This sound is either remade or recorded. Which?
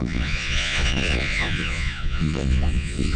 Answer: remade